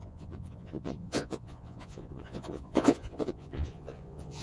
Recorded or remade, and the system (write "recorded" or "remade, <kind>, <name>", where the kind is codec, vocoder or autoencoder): remade, vocoder, Vocos